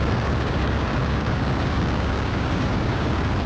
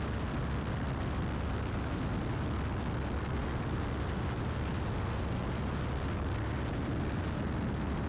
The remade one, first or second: first